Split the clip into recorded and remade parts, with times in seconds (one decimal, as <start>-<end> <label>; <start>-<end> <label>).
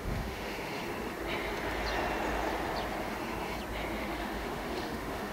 0.0-0.8 remade; 0.8-4.0 recorded; 4.0-5.3 remade